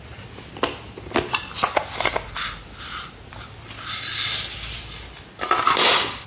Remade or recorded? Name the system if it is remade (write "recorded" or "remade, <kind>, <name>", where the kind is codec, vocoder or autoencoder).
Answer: recorded